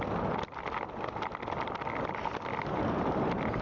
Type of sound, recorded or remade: recorded